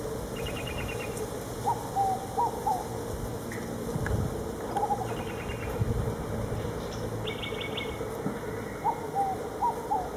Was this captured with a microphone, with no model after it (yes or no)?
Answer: yes